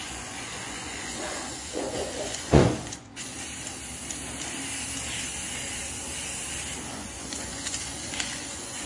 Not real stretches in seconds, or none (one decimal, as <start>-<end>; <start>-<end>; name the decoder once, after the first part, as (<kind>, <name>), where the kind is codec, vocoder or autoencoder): 0.0-3.3 (vocoder, Vocos); 6.9-8.9